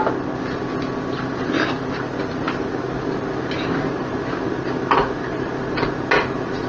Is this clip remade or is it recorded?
recorded